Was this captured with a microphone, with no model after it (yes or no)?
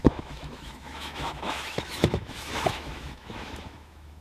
no